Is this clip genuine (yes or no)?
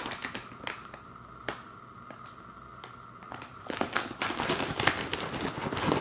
yes